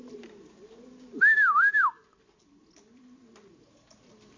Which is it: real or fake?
real